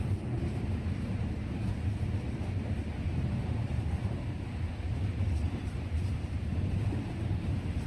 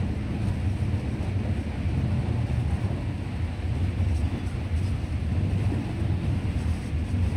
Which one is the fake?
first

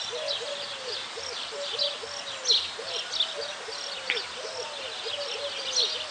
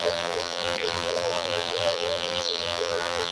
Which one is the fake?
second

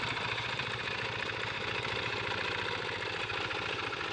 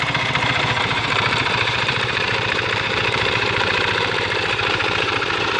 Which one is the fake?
second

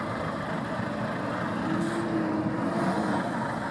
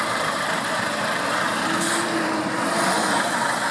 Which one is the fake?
second